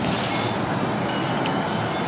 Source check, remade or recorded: recorded